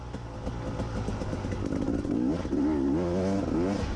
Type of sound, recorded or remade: recorded